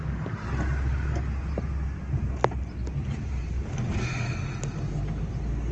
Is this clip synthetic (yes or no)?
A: no